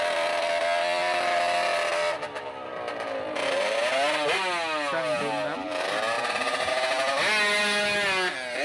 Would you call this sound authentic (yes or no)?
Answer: yes